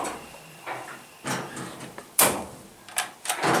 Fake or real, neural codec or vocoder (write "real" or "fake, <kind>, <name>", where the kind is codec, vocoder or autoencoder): fake, vocoder, BigVGAN v2